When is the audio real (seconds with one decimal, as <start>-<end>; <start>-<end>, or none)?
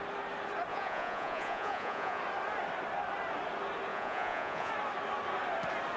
0.0-0.7; 2.2-3.9; 4.7-6.0